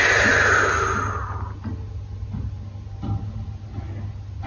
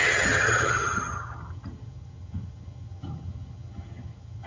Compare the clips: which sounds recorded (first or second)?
first